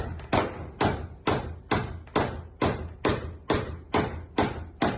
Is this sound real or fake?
real